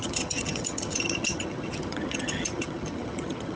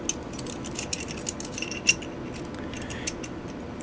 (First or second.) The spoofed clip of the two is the first